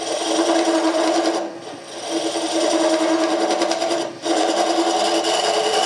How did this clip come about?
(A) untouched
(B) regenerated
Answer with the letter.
A